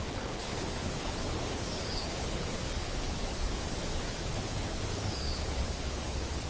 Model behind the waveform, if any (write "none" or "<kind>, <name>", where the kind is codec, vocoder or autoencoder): codec, HILCodec